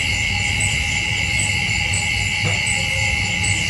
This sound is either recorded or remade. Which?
recorded